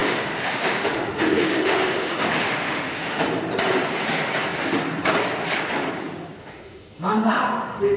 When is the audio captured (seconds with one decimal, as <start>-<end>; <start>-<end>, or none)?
3.2-6.4